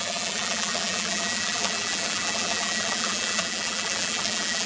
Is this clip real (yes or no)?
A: no